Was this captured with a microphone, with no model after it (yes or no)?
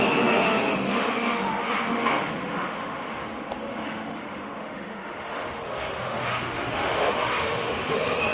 no